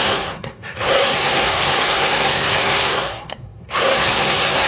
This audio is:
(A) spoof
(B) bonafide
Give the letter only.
A